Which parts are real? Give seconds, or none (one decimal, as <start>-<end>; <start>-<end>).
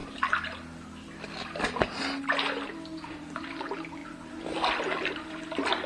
0.0-2.2; 4.0-5.3